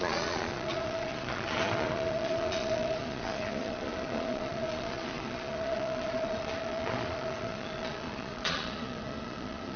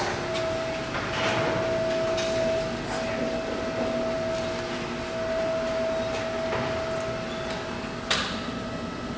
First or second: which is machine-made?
first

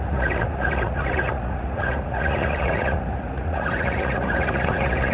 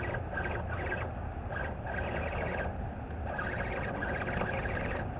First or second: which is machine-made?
first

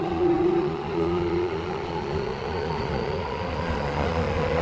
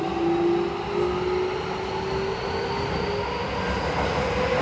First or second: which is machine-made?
first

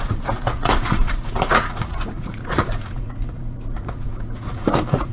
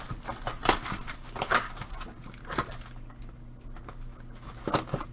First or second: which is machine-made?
first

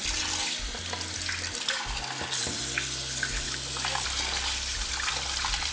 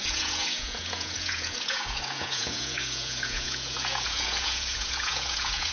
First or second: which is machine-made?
second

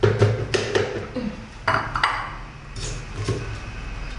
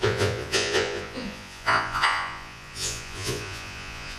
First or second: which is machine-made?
second